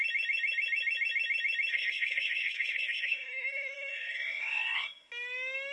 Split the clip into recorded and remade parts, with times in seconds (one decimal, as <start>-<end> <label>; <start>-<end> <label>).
0.0-1.7 recorded; 1.7-5.1 remade; 5.1-5.7 recorded